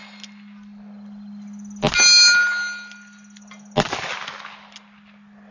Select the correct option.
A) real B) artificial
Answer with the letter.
A